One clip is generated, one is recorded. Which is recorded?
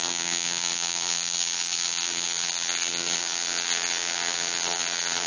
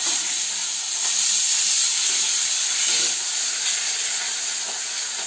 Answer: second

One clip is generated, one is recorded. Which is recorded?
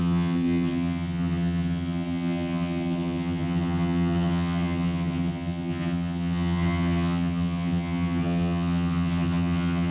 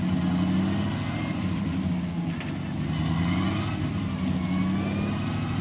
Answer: second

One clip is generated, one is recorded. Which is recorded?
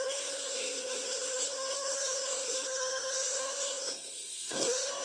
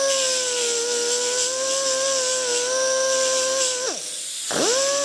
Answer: second